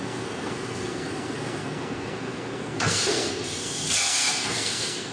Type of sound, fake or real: fake